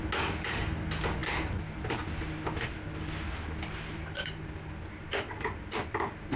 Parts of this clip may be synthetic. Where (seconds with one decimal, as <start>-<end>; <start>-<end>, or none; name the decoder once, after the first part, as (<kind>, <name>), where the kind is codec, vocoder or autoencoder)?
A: none